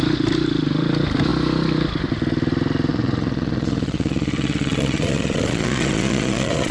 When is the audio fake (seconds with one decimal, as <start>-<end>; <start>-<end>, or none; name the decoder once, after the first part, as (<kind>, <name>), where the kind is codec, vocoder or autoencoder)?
2.9-6.7 (vocoder, Vocos)